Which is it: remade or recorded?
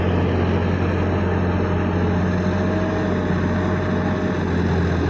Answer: recorded